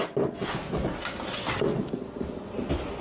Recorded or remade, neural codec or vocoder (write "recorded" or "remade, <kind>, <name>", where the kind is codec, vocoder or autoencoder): recorded